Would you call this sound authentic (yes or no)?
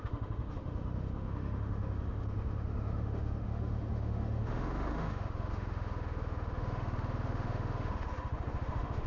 no